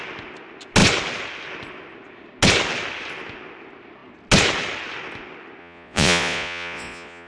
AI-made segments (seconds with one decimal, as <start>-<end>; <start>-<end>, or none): 5.6-7.3